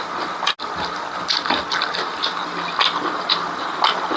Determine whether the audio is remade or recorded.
recorded